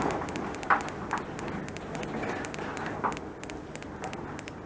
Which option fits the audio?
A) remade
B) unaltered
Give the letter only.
B